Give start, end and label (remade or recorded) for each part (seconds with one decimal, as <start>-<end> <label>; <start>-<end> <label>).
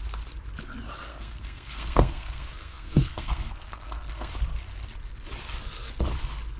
0.0-1.1 recorded; 1.1-4.3 remade; 4.3-6.6 recorded